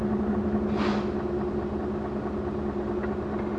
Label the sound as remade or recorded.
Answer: recorded